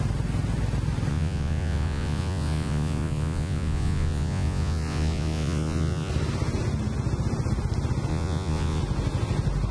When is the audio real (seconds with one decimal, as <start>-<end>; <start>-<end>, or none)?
0.0-1.1; 6.1-8.1; 8.8-9.7